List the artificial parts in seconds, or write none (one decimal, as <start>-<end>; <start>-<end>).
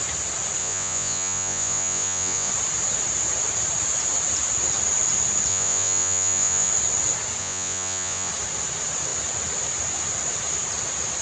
0.6-2.5; 5.5-6.7; 7.4-8.3